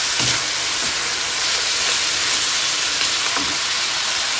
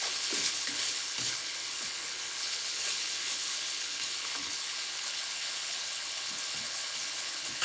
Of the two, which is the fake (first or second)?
second